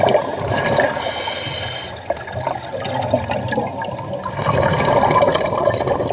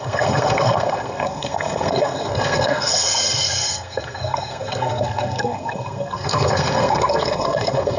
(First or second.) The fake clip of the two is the second